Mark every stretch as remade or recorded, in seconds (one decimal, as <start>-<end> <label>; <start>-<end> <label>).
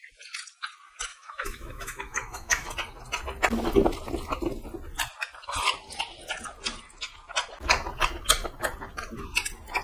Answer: 0.0-1.1 recorded; 1.1-2.7 remade; 2.7-9.8 recorded